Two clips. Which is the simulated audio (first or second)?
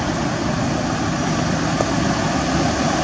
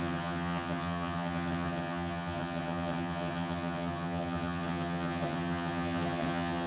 second